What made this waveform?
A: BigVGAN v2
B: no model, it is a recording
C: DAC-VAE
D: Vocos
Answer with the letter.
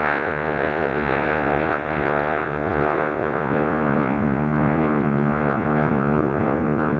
D